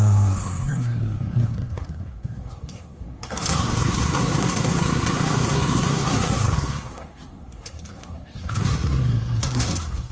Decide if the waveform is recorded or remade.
remade